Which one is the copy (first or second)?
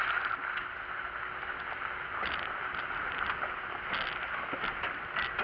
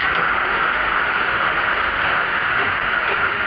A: second